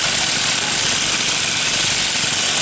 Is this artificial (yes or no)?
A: no